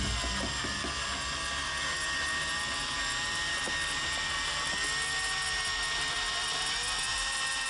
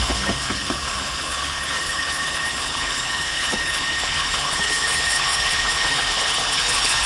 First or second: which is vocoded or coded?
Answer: second